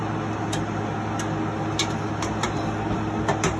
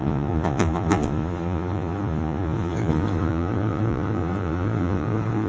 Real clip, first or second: first